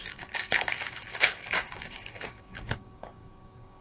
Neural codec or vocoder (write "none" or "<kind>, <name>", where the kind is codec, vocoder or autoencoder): codec, DAC